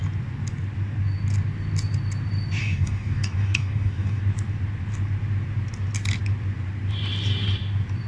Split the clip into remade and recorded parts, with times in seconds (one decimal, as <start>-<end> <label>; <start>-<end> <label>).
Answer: 0.0-2.6 recorded; 2.6-4.2 remade; 4.2-8.1 recorded